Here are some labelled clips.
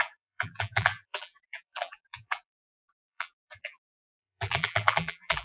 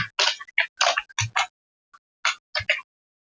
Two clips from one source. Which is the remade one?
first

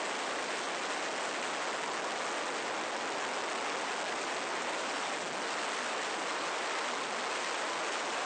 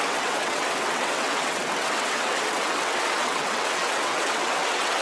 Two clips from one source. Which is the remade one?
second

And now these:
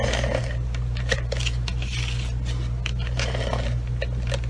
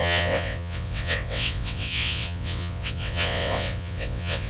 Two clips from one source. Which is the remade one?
second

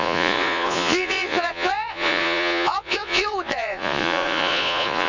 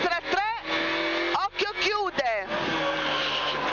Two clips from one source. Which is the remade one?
first